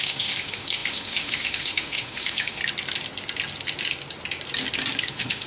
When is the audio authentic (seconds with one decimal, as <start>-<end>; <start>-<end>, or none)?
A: 2.6-5.0